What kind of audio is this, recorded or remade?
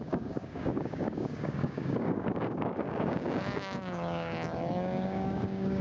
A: remade